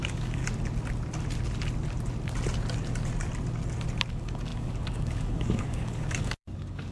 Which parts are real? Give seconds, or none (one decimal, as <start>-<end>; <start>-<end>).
0.4-4.1

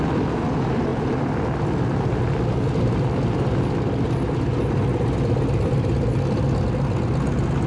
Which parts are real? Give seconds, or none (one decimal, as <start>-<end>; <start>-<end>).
0.0-7.7

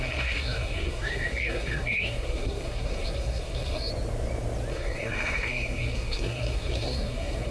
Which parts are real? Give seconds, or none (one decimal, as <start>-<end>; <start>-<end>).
3.9-4.7

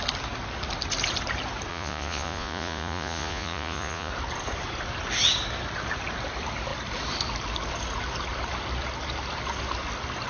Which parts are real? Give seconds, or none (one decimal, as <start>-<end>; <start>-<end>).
0.0-1.7; 4.1-10.3

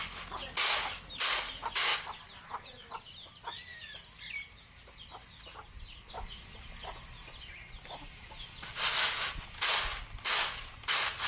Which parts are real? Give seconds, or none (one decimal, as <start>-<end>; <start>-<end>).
0.0-11.3

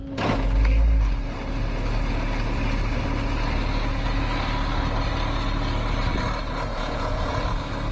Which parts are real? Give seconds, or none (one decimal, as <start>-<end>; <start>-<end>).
0.0-6.7; 7.3-7.9